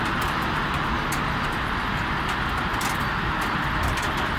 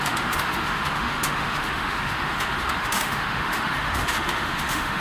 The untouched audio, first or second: first